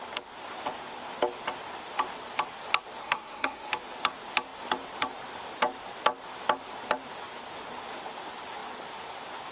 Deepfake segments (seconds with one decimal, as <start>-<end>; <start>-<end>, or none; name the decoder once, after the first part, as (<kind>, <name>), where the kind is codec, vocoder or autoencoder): 3.0-3.7 (codec, SNAC)